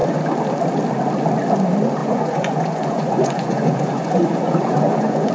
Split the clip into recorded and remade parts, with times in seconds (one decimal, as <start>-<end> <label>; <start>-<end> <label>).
0.0-2.0 recorded; 2.0-5.3 remade